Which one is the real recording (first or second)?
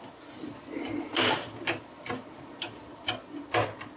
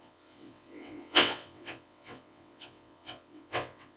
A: first